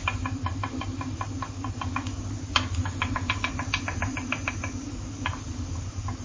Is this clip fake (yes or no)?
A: no